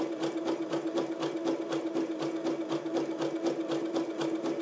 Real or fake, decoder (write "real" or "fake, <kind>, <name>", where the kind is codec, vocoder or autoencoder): real